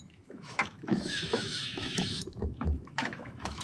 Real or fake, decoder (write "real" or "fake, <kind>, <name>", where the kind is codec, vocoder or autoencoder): fake, autoencoder, DAC-VAE